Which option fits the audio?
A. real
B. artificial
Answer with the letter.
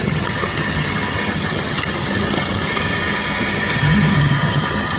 B